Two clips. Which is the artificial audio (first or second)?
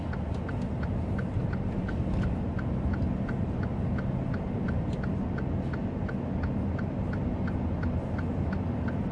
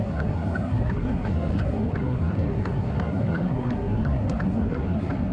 second